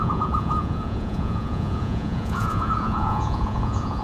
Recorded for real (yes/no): no